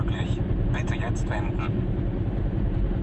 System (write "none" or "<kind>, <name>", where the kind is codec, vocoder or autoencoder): vocoder, BigVGAN v2